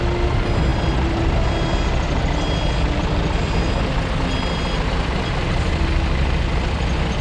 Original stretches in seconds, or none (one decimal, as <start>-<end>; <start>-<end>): 0.0-7.2